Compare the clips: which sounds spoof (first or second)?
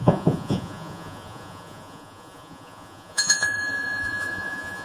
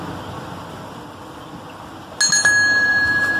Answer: first